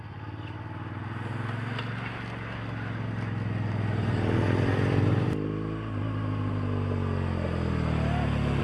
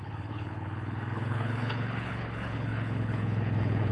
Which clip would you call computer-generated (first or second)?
second